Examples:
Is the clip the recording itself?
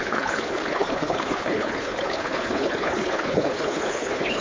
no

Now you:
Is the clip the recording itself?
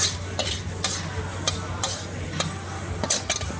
yes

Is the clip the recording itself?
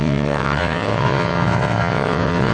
no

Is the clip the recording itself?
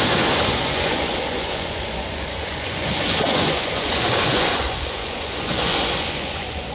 no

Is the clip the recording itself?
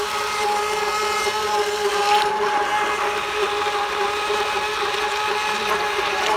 yes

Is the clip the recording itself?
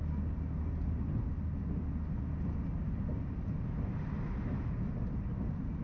yes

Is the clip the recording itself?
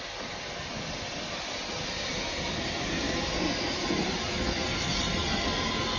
yes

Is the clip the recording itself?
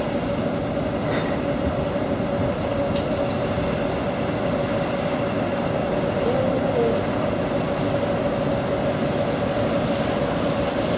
yes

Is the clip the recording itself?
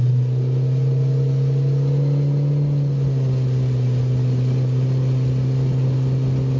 yes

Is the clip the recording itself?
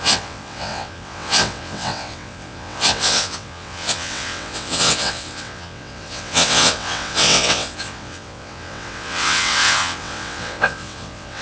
no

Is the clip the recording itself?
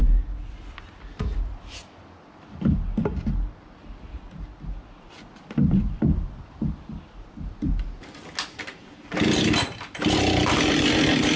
yes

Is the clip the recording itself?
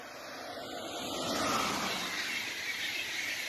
yes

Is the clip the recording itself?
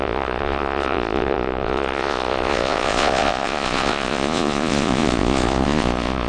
no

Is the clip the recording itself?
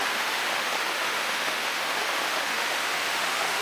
no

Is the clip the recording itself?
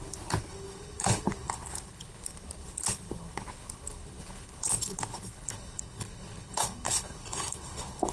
no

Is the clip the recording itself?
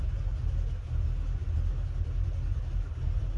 yes